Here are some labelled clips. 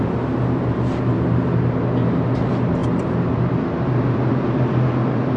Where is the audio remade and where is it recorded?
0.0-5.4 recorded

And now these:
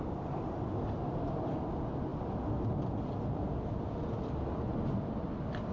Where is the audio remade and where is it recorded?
0.0-5.7 recorded

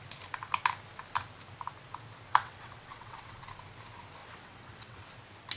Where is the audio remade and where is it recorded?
0.0-2.3 recorded; 2.3-3.4 remade; 3.4-4.2 recorded; 4.2-5.1 remade; 5.1-5.6 recorded

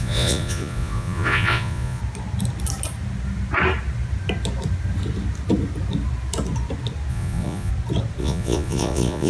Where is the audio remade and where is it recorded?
0.0-2.0 remade; 2.0-7.1 recorded; 7.1-7.7 remade; 7.7-8.2 recorded; 8.2-9.3 remade

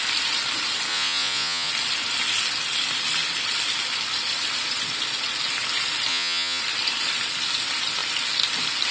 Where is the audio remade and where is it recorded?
0.0-0.9 recorded; 0.9-1.7 remade; 1.7-6.1 recorded; 6.1-6.6 remade; 6.6-8.9 recorded

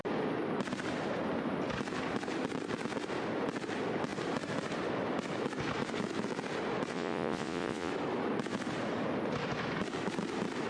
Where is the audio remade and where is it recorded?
0.0-6.9 recorded; 6.9-7.9 remade; 7.9-10.7 recorded

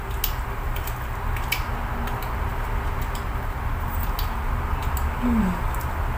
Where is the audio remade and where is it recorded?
0.0-6.2 recorded

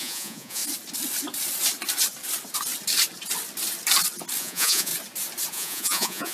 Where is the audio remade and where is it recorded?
0.0-0.6 remade; 0.6-4.4 recorded; 4.4-4.9 remade; 4.9-5.5 recorded; 5.5-6.3 remade